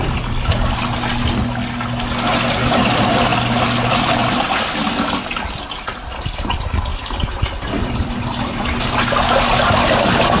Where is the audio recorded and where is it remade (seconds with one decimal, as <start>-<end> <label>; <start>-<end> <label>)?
0.0-6.9 recorded; 6.9-8.6 remade; 8.6-10.4 recorded